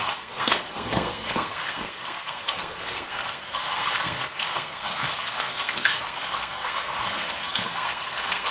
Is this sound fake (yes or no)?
yes